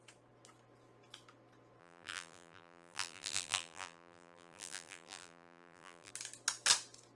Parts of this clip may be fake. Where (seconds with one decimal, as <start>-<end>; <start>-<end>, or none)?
1.8-6.1